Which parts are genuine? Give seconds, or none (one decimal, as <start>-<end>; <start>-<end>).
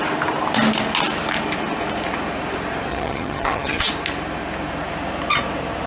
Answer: 0.0-2.9; 3.9-5.9